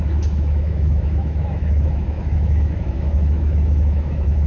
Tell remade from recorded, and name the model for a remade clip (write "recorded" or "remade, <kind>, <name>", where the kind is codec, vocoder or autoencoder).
remade, autoencoder, DAC-VAE